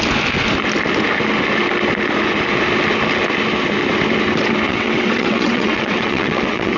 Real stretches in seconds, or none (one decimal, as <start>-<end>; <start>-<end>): 0.0-4.7